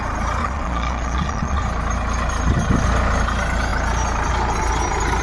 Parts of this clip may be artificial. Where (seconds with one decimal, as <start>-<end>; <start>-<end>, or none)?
0.4-1.6